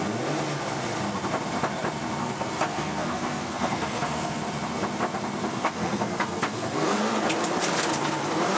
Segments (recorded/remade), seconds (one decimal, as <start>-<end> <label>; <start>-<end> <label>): 0.0-2.2 recorded; 2.2-4.4 remade; 4.4-5.5 recorded; 5.5-7.0 remade; 7.0-8.6 recorded